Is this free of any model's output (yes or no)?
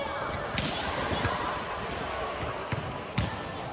yes